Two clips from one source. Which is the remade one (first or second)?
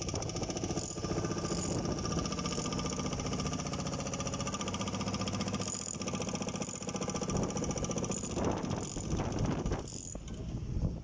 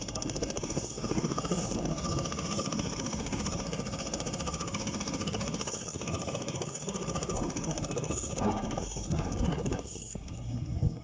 second